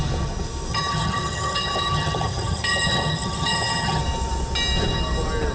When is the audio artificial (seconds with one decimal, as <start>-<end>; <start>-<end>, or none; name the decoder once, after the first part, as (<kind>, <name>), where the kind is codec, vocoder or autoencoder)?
0.7-4.0 (vocoder, HiFi-GAN)